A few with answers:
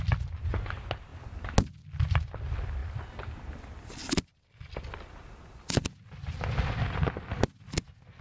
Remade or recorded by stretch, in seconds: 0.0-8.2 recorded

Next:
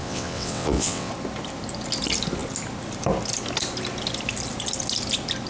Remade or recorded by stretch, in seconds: 0.0-1.1 remade; 1.1-5.5 recorded

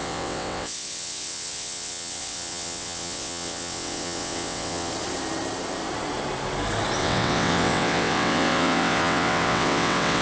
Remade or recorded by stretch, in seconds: 0.0-4.9 remade; 4.9-7.0 recorded; 7.0-10.2 remade

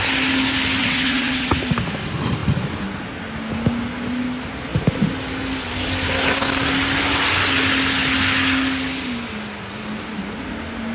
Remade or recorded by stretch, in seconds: 0.0-0.8 recorded; 0.8-1.6 remade; 1.6-10.9 recorded

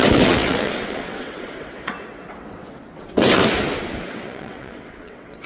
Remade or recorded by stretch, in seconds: 0.0-3.4 remade; 3.4-4.1 recorded; 4.1-5.5 remade

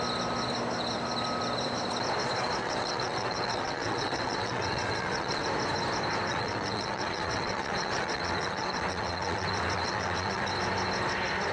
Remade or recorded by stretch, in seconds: 0.0-2.6 recorded; 2.6-5.4 remade; 5.4-6.3 recorded; 6.3-10.5 remade; 10.5-11.5 recorded